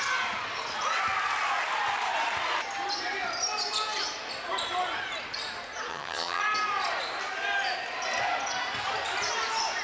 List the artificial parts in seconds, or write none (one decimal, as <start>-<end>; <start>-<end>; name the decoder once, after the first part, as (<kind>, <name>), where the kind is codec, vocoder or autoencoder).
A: 5.9-6.4 (vocoder, HiFi-GAN)